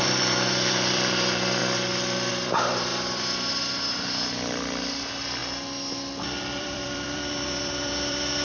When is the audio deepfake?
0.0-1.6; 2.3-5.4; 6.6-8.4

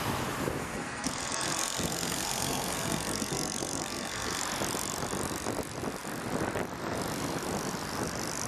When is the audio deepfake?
0.6-4.4

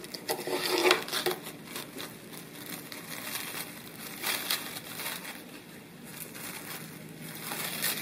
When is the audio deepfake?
none

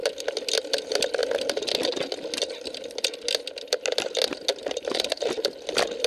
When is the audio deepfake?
0.7-1.2; 4.9-6.1